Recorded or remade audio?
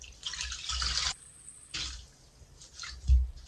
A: recorded